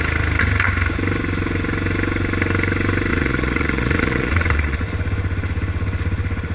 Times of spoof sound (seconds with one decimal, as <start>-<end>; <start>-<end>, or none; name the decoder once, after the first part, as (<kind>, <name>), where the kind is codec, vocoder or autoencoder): 3.1-4.8 (vocoder, Vocos)